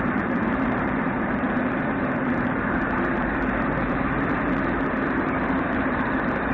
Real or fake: fake